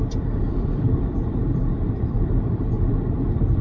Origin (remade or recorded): remade